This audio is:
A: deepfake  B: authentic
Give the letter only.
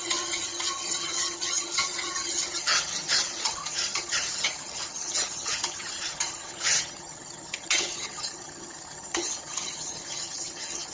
A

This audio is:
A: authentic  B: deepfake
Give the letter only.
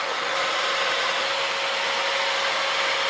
A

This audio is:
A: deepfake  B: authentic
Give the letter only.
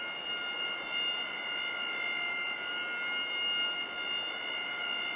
B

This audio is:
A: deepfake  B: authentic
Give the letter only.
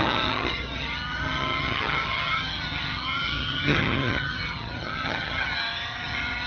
A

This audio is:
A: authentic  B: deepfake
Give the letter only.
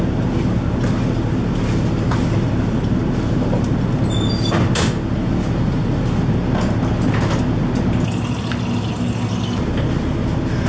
A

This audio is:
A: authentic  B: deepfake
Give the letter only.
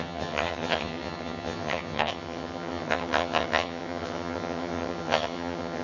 B